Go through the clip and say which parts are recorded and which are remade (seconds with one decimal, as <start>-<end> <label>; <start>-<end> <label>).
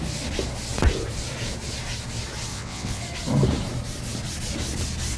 0.0-2.5 recorded; 2.5-3.0 remade; 3.0-5.2 recorded